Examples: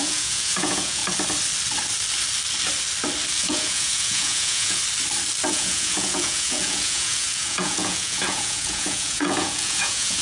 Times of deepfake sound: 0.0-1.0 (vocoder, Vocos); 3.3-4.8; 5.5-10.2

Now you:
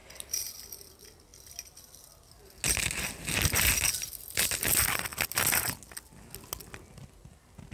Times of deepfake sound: none

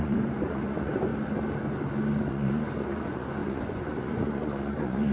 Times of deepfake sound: 0.0-1.1 (vocoder, Vocos); 2.3-5.1

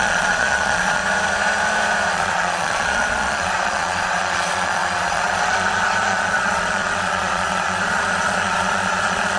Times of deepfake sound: 0.0-1.0 (vocoder, Vocos); 2.1-9.4

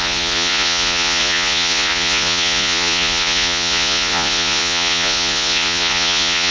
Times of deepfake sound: 0.0-6.5 (vocoder, Vocos)

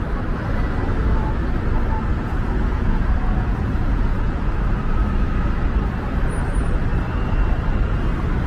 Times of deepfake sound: 2.1-4.5 (vocoder, Vocos)

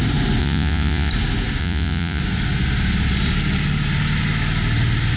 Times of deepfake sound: 0.4-1.1 (vocoder, Vocos); 1.6-2.2

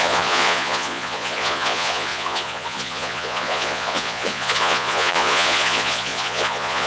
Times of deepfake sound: 0.0-6.9 (vocoder, Vocos)